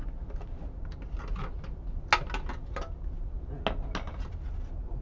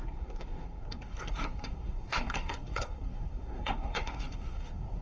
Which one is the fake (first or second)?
second